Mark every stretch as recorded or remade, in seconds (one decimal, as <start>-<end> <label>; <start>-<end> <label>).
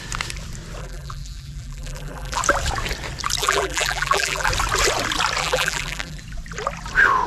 0.0-0.8 recorded; 0.8-2.4 remade; 2.4-3.4 recorded; 3.4-4.5 remade; 4.5-5.4 recorded; 5.4-6.2 remade; 6.2-7.3 recorded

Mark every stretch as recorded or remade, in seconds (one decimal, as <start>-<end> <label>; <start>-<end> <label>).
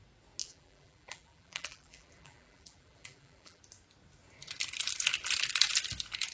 0.0-0.4 recorded; 0.4-3.6 remade; 3.6-6.3 recorded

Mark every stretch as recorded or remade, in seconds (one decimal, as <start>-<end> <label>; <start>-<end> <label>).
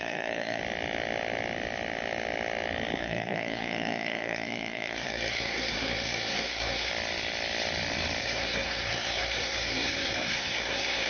0.0-0.6 remade; 0.6-3.0 recorded; 3.0-6.9 remade; 6.9-8.2 recorded; 8.2-11.1 remade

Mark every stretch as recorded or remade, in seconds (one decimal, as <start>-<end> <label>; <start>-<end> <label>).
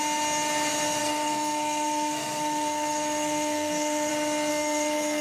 0.0-1.0 recorded; 1.0-4.1 remade; 4.1-4.5 recorded; 4.5-5.2 remade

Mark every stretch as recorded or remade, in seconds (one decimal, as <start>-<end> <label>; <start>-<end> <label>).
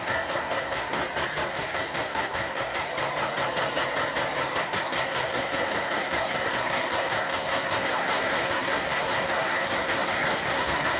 0.0-1.0 remade; 1.0-1.5 recorded; 1.5-2.9 remade; 2.9-4.6 recorded; 4.6-11.0 remade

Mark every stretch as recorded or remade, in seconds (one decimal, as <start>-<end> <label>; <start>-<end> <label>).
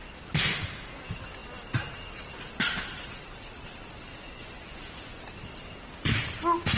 0.0-4.1 recorded; 4.1-5.2 remade; 5.2-6.8 recorded